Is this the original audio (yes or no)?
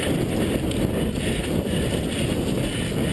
yes